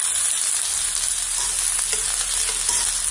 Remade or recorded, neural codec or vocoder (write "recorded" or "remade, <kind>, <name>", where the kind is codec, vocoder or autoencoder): recorded